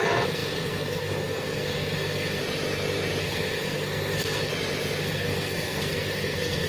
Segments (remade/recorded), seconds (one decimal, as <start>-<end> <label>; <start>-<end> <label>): 0.0-2.4 remade; 2.4-3.2 recorded; 3.2-4.5 remade; 4.5-5.0 recorded; 5.0-6.7 remade

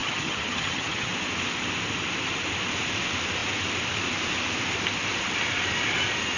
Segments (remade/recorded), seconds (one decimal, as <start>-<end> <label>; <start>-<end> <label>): 0.0-1.1 remade; 1.1-6.4 recorded